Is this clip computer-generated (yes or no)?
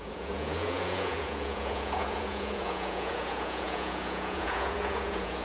yes